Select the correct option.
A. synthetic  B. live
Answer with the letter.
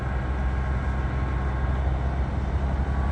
B